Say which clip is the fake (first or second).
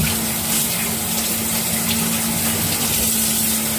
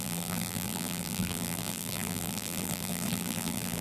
second